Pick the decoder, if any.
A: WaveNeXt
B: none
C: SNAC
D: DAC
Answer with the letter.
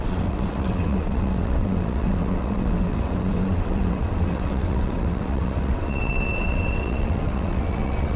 A